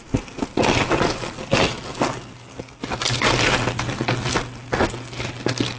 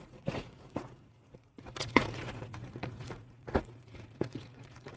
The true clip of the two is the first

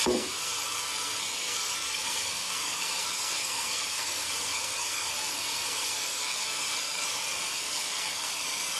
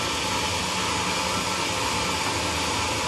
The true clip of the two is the second